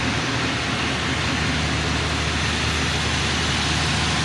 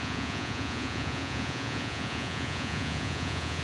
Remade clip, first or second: second